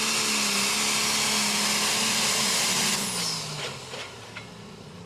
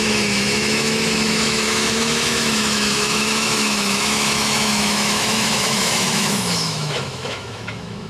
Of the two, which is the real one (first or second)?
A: first